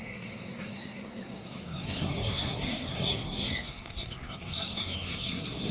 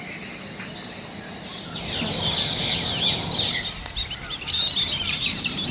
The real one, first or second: second